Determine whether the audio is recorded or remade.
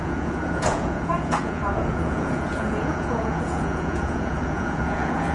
remade